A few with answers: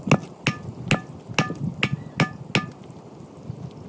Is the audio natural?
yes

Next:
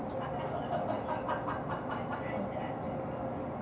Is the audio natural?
yes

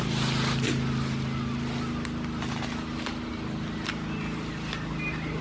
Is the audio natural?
yes